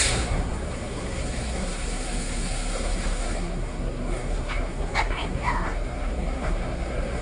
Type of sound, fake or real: fake